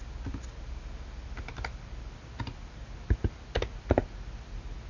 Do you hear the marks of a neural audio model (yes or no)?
no